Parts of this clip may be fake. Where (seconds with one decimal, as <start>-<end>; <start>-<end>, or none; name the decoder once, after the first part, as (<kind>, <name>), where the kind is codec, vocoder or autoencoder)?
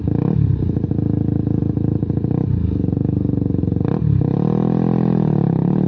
none